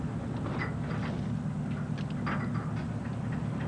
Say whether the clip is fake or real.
real